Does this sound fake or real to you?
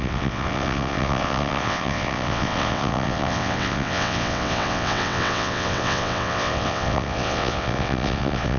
fake